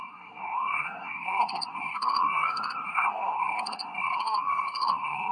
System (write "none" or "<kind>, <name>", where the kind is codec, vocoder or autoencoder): codec, SNAC